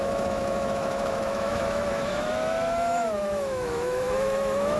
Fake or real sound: fake